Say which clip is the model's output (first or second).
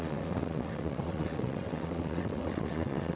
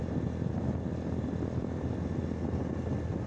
first